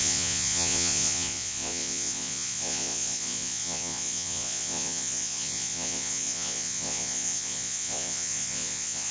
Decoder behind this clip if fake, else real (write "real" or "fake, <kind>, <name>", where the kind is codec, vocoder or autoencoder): fake, vocoder, Vocos